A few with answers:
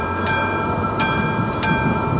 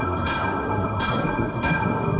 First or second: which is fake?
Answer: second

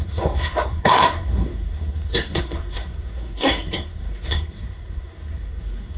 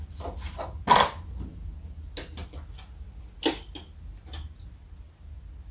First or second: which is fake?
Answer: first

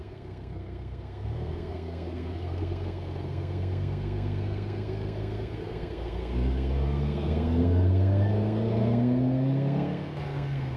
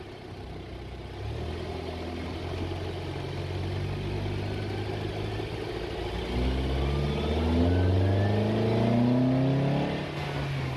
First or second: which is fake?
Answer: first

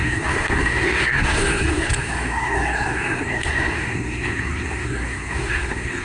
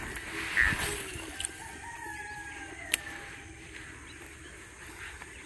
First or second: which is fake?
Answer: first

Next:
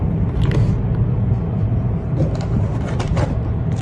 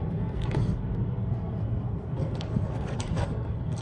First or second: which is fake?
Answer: second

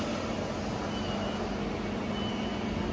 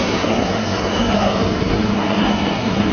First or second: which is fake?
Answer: second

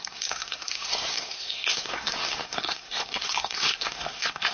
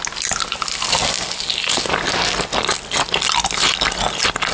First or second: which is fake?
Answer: first